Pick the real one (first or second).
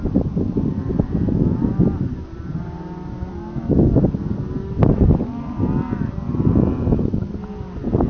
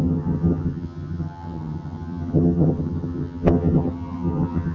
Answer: first